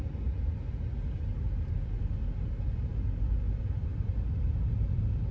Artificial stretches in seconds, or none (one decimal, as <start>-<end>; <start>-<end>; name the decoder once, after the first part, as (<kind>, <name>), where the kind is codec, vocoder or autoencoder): none